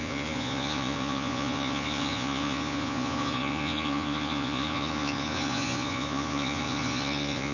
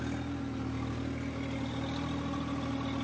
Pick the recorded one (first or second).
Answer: second